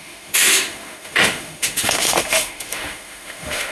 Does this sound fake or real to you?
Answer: fake